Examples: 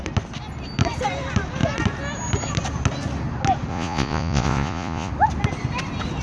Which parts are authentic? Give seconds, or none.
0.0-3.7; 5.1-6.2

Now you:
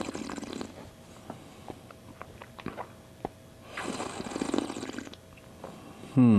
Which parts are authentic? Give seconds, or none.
0.0-6.4